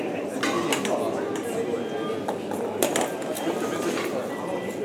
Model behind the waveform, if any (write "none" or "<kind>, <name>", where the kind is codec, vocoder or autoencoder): none